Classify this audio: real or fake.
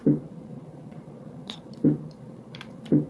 fake